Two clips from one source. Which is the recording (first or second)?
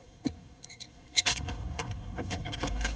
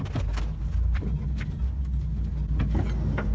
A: second